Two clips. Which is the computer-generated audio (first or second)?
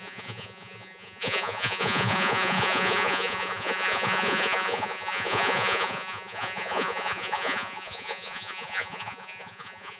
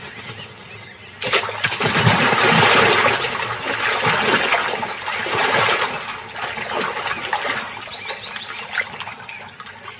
first